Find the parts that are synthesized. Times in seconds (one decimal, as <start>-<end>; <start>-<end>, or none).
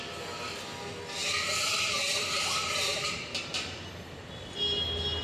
1.2-4.2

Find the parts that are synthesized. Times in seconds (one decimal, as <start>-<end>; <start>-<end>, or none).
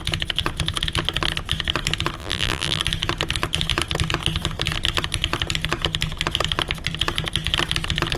2.2-2.8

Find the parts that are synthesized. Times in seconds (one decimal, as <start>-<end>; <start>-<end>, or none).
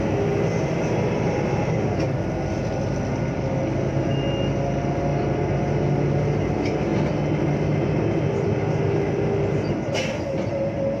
none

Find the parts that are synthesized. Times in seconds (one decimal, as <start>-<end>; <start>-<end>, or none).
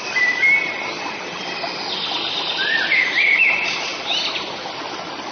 0.0-3.9; 4.7-5.3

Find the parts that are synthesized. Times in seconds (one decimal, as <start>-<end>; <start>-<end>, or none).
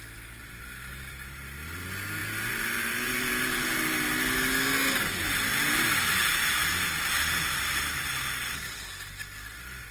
0.4-0.9; 2.2-3.8; 6.6-8.2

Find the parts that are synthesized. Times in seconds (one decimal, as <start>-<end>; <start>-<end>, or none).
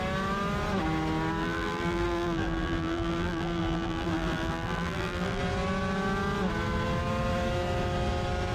1.4-5.4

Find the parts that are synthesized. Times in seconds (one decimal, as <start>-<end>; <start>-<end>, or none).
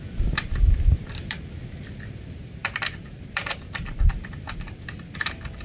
0.0-5.6